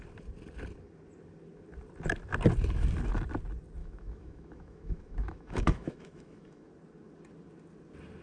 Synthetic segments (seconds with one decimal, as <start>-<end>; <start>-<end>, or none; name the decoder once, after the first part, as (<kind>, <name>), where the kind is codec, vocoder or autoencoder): 3.8-6.7 (autoencoder, DAC-VAE)